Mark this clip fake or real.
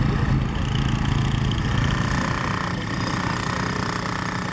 real